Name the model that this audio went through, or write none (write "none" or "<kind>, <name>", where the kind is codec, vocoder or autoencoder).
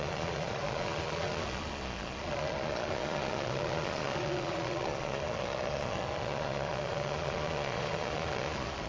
vocoder, Vocos